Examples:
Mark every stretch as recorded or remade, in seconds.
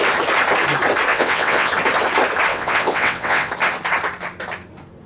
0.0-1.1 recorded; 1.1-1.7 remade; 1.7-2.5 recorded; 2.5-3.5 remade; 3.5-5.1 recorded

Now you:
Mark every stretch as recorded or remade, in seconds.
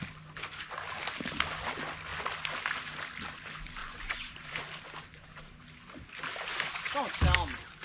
0.0-3.8 recorded; 3.8-4.6 remade; 4.6-6.5 recorded; 6.5-7.2 remade; 7.2-7.8 recorded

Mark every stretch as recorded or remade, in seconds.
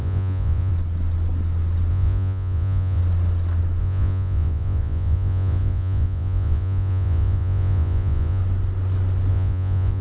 0.0-0.7 remade; 0.7-1.9 recorded; 1.9-3.0 remade; 3.0-3.8 recorded; 3.8-8.4 remade; 8.4-9.3 recorded; 9.3-10.0 remade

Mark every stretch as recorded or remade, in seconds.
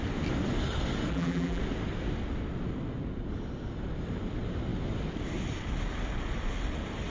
0.0-1.1 recorded; 1.1-1.6 remade; 1.6-7.1 recorded